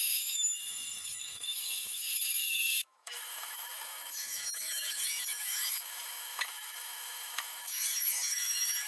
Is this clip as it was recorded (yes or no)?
no